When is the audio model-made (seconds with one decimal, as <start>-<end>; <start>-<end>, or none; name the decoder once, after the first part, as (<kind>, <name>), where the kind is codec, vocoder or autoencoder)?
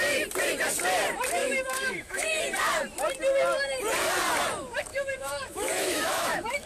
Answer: 1.4-2.4 (autoencoder, DAC-VAE); 4.9-6.7